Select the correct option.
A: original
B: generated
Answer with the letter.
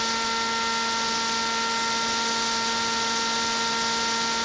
A